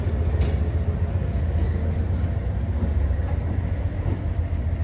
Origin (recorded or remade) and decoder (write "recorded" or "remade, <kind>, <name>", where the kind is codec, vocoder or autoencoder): recorded